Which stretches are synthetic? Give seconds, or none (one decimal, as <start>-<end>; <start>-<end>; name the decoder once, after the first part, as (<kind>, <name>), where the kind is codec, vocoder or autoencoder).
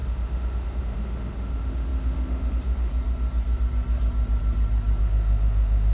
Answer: 0.0-2.9 (autoencoder, DAC-VAE); 5.0-5.9